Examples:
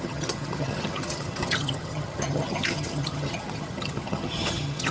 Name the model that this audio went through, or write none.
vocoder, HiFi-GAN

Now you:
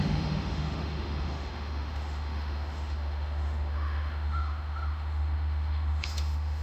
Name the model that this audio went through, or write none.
autoencoder, DAC-VAE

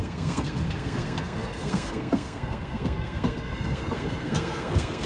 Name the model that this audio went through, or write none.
codec, SNAC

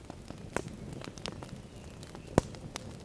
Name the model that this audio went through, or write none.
none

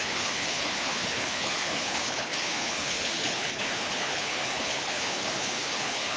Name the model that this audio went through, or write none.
codec, HILCodec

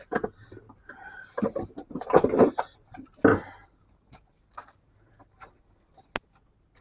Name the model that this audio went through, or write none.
none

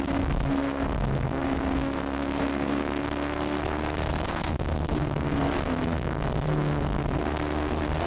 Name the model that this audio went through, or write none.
codec, SNAC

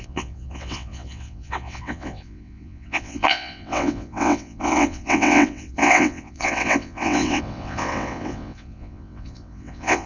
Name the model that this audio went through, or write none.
vocoder, WaveNeXt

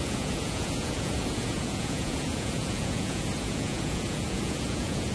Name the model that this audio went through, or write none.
vocoder, Vocos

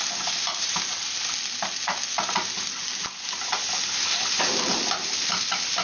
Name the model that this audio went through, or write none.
none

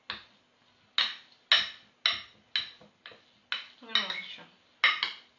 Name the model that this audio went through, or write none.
none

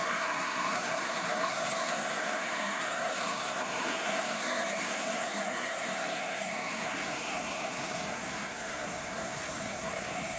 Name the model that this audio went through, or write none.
codec, SNAC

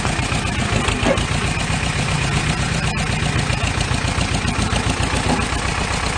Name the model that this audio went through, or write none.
none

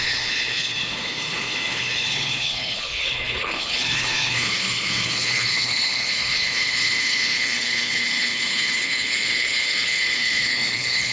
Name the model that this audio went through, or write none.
codec, HILCodec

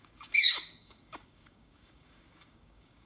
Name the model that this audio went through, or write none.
codec, DAC